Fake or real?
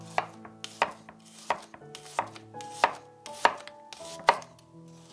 real